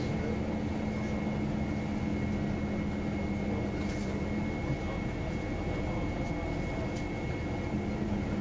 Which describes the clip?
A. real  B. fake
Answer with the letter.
A